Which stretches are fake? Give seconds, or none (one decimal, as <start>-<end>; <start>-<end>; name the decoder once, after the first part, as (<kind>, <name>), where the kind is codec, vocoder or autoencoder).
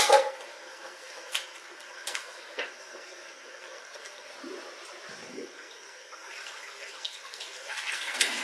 0.0-4.3 (codec, SNAC); 5.3-8.4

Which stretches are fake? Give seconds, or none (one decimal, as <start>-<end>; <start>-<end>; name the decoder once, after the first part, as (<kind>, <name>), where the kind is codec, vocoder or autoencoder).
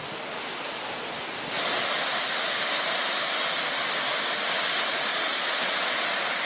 5.1-5.9 (vocoder, Vocos)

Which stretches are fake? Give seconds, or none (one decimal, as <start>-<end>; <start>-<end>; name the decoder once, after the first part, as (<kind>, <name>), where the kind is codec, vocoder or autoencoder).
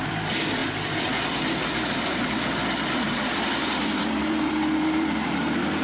0.0-5.8 (vocoder, BigVGAN v2)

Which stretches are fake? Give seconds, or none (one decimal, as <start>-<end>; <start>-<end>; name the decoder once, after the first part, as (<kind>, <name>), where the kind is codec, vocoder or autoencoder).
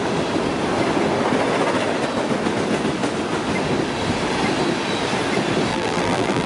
5.7-6.5 (vocoder, BigVGAN v2)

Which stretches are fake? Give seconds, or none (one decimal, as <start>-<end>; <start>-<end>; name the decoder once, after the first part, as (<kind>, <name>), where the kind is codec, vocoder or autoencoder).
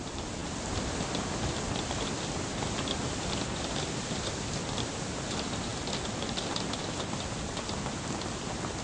none